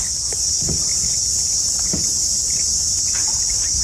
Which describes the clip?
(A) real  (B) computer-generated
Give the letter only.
A